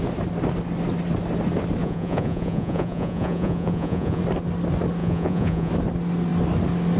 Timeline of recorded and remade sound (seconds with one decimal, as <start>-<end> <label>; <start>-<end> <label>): 0.0-1.8 recorded; 1.8-4.2 remade; 4.2-5.0 recorded; 5.0-5.7 remade; 5.7-7.0 recorded